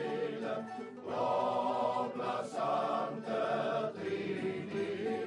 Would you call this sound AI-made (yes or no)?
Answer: yes